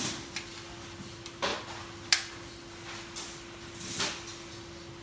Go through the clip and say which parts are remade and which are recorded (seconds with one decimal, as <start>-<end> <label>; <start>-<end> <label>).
0.0-5.0 recorded